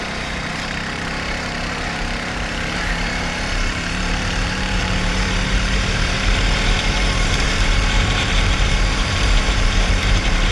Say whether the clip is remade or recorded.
remade